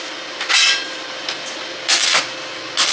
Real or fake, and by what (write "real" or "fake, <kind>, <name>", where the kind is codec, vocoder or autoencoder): real